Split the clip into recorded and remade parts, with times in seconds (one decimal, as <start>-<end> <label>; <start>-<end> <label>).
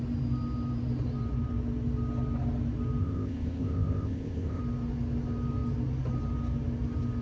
0.0-3.0 recorded; 3.0-4.6 remade; 4.6-7.2 recorded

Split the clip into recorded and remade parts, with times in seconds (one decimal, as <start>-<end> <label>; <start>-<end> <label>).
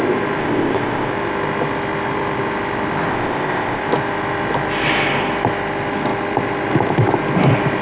0.0-0.4 recorded; 0.4-1.1 remade; 1.1-3.1 recorded; 3.1-3.8 remade; 3.8-7.8 recorded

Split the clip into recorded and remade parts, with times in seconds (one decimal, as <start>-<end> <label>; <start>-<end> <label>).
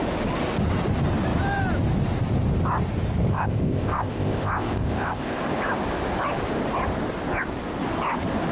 0.0-3.3 recorded; 3.3-5.4 remade; 5.4-8.5 recorded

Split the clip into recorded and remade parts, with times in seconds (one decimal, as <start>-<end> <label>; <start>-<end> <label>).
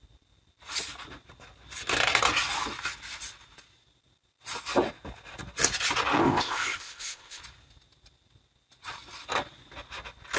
0.0-6.2 recorded; 6.2-7.4 remade; 7.4-10.4 recorded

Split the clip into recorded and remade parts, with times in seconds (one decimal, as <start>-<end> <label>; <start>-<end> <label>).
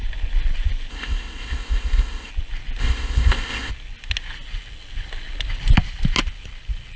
0.0-0.9 recorded; 0.9-2.3 remade; 2.3-2.8 recorded; 2.8-3.7 remade; 3.7-7.0 recorded